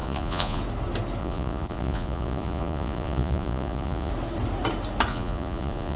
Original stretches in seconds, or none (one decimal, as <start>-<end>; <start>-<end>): 0.6-1.2; 4.1-5.1